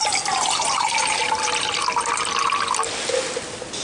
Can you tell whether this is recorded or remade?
recorded